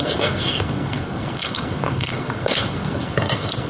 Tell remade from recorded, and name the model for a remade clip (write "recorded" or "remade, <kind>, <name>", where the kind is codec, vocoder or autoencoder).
remade, codec, SNAC